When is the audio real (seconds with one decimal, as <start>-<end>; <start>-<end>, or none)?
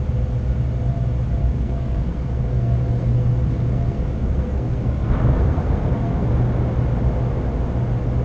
0.0-1.4; 6.3-8.2